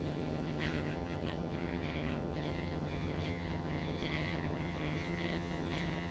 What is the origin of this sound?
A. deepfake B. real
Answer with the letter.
A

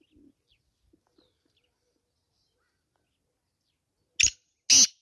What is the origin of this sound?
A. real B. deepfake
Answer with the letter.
A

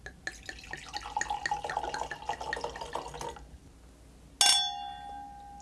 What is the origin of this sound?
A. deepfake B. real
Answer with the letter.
B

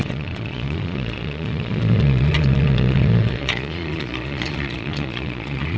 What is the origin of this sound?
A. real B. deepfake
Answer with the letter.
B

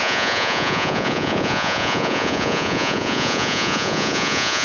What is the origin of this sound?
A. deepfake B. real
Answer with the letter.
A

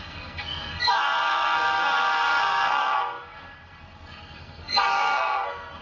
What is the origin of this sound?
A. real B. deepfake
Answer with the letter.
B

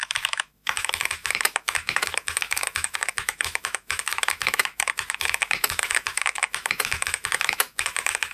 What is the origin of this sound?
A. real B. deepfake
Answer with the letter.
B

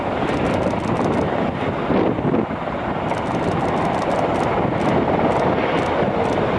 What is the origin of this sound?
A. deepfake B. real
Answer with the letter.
B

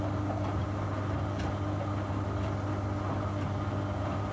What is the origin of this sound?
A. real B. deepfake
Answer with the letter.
A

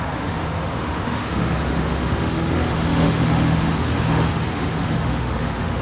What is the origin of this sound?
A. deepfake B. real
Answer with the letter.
A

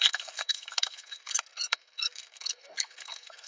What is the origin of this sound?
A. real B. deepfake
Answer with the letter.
B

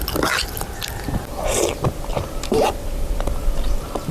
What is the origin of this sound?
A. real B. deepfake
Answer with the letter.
A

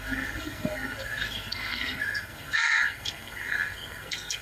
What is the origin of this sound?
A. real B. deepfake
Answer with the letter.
B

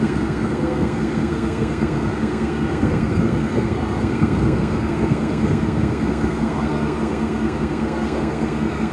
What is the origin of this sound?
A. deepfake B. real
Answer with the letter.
A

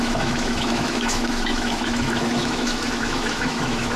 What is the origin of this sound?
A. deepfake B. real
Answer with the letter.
A